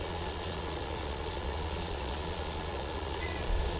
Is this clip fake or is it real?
fake